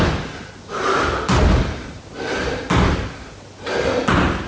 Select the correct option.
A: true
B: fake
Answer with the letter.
A